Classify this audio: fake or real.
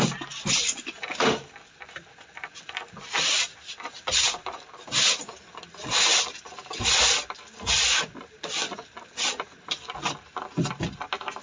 real